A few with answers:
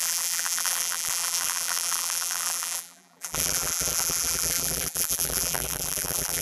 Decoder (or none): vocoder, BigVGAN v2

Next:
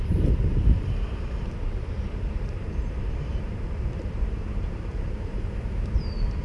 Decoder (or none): vocoder, BigVGAN v2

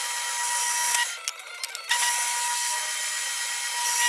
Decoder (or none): none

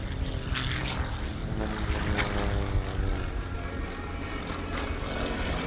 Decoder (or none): none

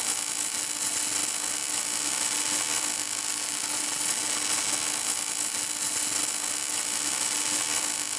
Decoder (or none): none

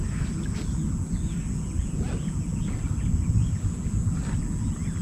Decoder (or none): none